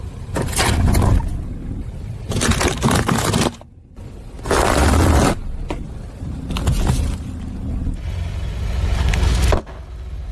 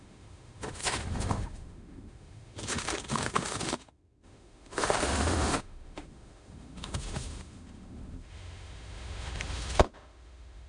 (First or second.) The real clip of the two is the first